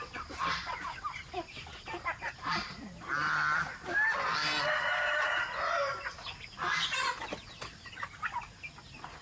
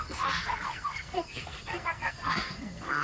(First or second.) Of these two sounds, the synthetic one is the second